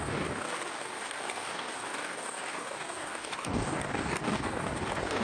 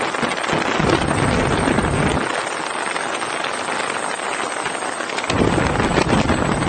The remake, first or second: first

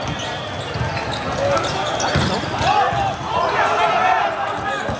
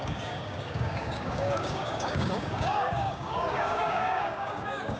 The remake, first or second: second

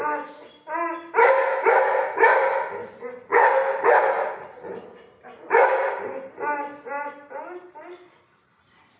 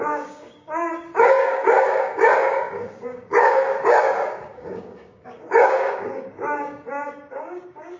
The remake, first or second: second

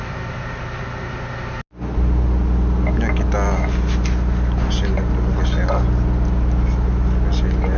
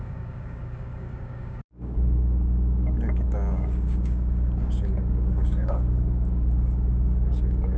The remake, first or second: second